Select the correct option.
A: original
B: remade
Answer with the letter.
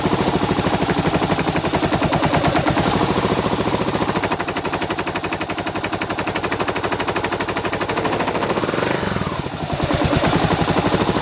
A